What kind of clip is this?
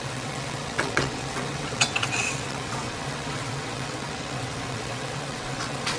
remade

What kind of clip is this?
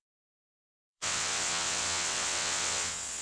remade